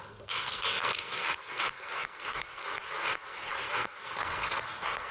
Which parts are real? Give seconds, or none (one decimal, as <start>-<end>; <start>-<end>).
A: none